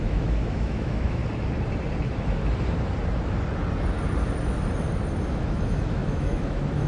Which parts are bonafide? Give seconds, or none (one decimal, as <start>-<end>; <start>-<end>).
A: 1.2-5.3